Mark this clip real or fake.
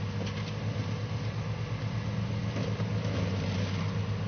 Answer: real